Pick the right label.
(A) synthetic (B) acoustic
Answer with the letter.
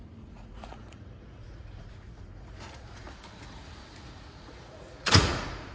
A